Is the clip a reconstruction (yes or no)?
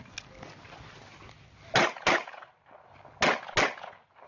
no